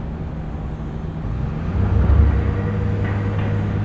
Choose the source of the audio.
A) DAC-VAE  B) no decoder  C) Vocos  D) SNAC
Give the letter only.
B